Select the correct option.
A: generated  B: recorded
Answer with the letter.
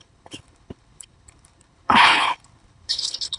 A